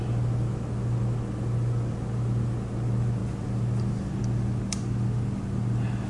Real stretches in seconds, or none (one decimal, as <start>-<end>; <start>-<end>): 0.0-6.1